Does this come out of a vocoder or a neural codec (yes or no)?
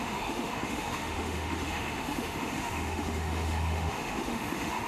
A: yes